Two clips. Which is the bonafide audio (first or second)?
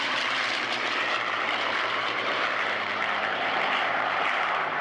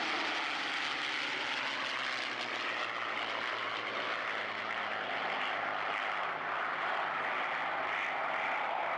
second